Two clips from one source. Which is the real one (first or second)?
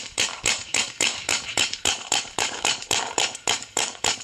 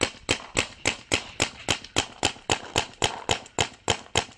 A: second